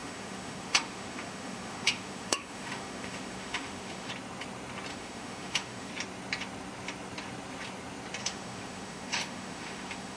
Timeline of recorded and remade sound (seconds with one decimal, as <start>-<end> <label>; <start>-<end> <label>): 0.0-4.1 remade; 4.1-4.9 recorded; 4.9-5.9 remade; 5.9-8.2 recorded; 8.2-10.2 remade